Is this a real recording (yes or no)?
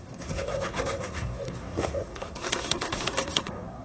no